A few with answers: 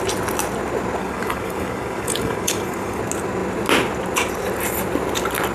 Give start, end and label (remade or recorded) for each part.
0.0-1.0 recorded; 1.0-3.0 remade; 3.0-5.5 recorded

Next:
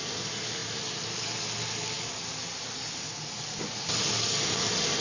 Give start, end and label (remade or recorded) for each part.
0.0-5.0 recorded

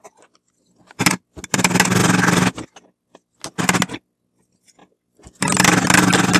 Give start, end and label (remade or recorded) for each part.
0.0-6.4 recorded